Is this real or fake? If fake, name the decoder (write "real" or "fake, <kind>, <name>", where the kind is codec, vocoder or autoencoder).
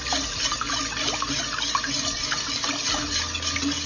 real